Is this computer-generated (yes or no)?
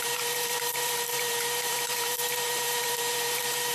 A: yes